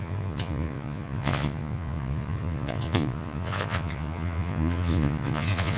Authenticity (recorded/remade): remade